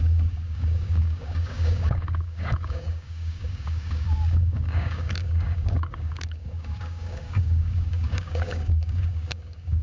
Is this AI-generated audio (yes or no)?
yes